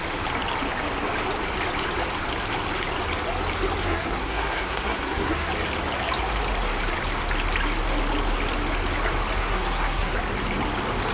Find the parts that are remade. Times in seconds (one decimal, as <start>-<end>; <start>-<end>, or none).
3.8-5.5; 9.4-10.1